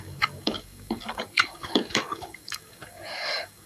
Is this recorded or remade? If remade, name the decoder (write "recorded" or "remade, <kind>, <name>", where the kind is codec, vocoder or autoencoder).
remade, codec, DAC